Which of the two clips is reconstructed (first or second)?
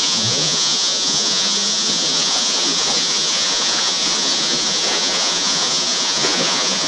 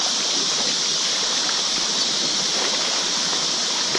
first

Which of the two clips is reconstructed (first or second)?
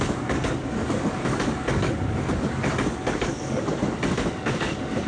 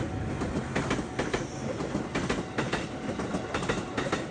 first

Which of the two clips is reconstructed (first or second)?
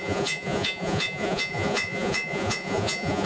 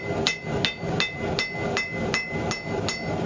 first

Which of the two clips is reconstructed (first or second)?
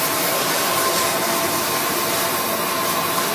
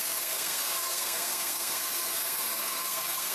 second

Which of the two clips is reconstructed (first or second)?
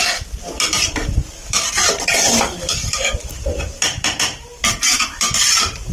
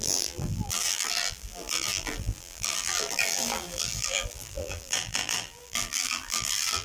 second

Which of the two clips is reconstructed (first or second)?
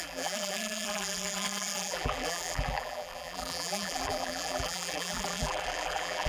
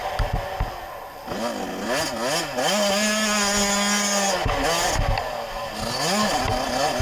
first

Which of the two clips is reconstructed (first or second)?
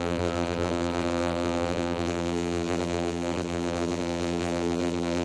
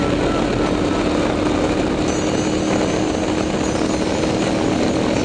first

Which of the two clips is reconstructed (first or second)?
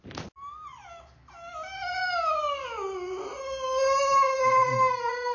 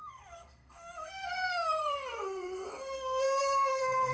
second